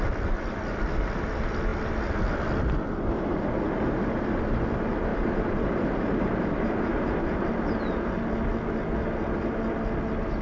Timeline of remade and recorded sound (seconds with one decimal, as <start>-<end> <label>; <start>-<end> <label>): 0.0-5.1 recorded; 5.1-7.4 remade; 7.4-10.4 recorded

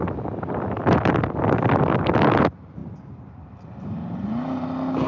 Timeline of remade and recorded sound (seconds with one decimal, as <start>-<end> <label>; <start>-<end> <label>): 0.0-1.2 recorded; 1.2-2.1 remade; 2.1-5.1 recorded